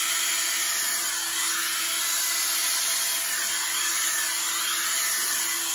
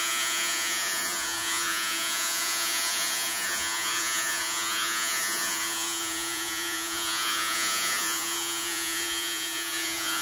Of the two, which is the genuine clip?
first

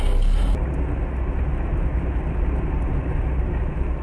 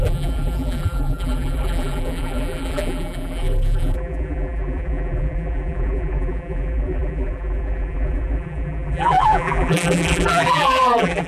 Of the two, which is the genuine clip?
first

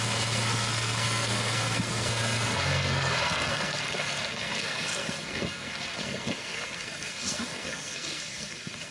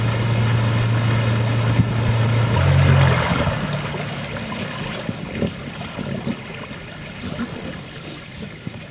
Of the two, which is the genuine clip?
second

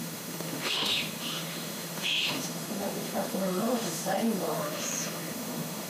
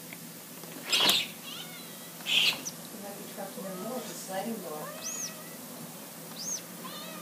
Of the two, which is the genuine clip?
second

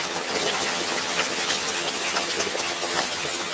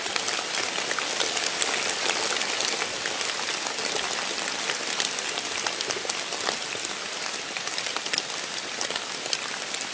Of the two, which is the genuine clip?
second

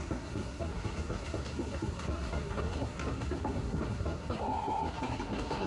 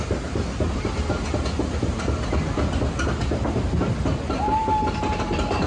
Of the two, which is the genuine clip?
second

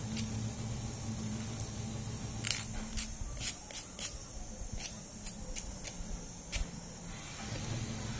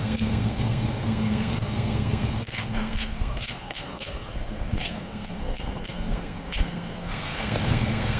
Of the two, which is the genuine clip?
first